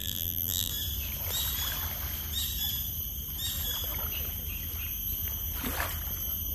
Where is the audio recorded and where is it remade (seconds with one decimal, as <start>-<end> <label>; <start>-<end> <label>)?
0.0-0.7 remade; 0.7-6.5 recorded